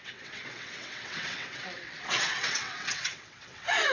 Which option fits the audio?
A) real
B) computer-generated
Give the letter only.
B